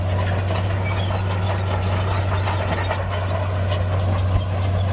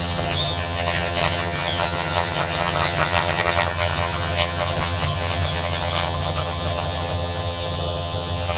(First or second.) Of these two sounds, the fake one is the second